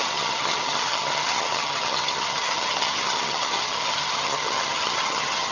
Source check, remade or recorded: remade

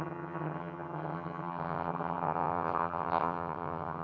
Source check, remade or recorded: remade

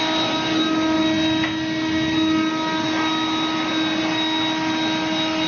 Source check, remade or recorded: recorded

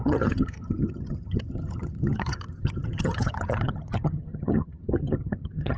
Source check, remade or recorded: remade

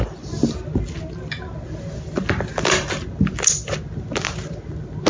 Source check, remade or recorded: recorded